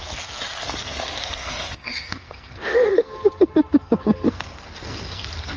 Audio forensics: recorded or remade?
remade